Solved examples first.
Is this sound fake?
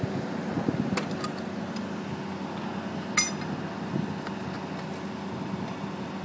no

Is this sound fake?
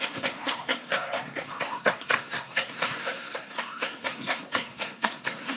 yes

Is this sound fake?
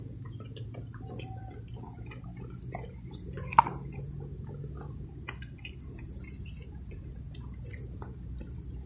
no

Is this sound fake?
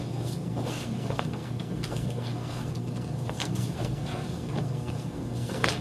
yes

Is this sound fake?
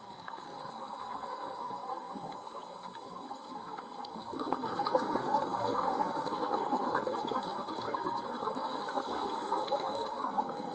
yes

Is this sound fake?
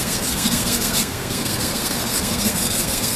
yes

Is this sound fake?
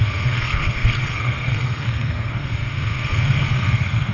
yes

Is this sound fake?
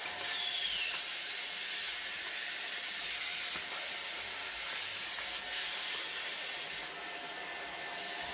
no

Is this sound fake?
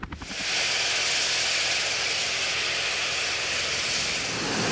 no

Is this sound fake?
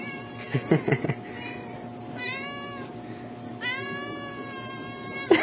no